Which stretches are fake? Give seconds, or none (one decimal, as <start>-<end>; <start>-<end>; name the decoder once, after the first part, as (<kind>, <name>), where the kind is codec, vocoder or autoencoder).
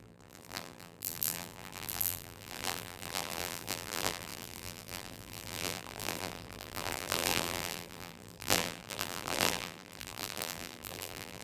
0.0-11.4 (vocoder, BigVGAN v2)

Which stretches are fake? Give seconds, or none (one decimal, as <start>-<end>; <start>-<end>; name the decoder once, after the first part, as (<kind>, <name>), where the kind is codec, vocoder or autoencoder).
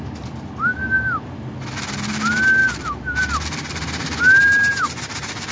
2.6-5.5 (vocoder, BigVGAN v2)